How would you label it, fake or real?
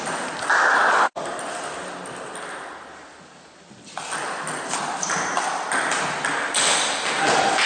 real